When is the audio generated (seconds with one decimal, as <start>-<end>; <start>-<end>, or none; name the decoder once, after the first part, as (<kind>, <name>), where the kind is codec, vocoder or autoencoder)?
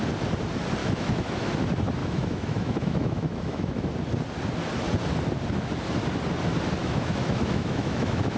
0.8-1.5 (autoencoder, DAC-VAE); 2.0-3.9; 6.8-8.4